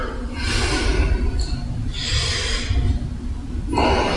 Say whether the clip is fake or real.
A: real